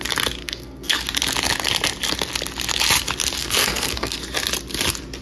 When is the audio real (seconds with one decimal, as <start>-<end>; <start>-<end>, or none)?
0.0-0.4; 1.0-3.4; 4.2-5.2